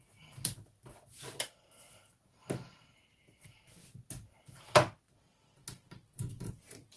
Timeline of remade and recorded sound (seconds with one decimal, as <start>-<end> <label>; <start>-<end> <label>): 0.0-7.0 recorded